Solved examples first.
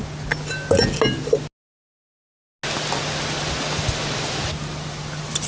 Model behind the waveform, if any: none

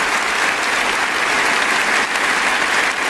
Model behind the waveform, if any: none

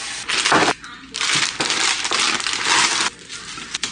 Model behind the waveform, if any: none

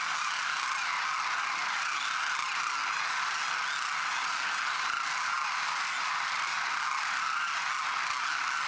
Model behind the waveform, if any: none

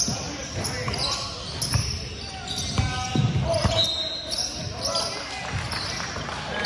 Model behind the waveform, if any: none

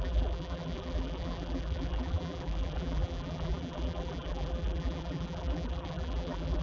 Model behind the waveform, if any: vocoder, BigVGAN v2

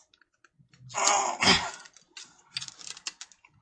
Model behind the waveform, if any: none